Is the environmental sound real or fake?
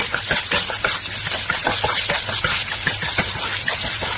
real